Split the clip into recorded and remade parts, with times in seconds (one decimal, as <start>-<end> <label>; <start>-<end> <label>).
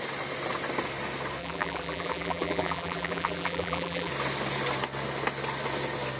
0.0-1.4 recorded; 1.4-4.1 remade; 4.1-6.2 recorded